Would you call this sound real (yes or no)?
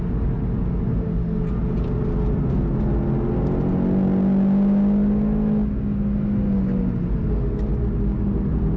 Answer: yes